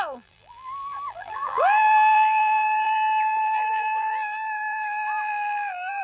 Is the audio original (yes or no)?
no